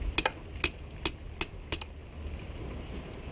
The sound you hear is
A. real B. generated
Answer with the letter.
A